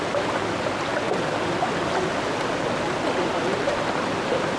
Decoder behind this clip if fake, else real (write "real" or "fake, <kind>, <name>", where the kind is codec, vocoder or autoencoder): real